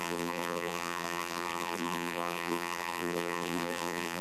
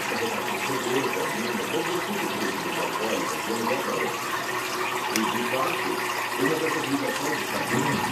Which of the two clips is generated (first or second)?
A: first